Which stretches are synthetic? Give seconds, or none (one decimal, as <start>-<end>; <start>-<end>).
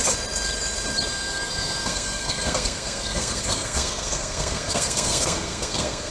1.1-6.1